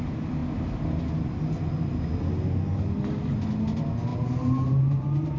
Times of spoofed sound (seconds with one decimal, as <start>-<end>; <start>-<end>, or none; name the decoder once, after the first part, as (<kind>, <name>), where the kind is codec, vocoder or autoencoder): 4.1-5.4 (vocoder, BigVGAN v2)

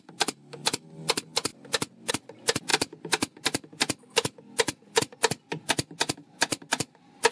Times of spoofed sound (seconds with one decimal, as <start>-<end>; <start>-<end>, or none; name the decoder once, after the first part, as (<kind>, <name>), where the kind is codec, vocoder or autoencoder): none

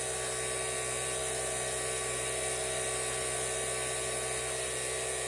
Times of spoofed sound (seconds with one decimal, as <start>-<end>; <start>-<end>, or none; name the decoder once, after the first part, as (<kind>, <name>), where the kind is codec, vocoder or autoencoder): 1.2-4.4 (vocoder, BigVGAN v2)

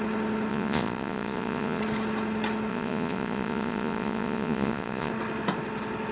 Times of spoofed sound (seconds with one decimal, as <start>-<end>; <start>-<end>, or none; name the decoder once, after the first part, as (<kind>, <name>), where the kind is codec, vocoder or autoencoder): 0.5-1.8 (vocoder, Vocos); 2.7-5.1